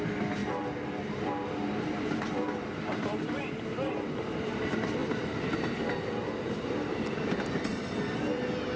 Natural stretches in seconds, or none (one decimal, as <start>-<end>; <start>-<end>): 0.0-0.4; 4.6-5.0; 7.4-8.8